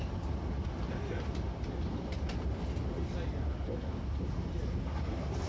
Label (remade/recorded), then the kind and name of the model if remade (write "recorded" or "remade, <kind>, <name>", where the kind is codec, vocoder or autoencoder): recorded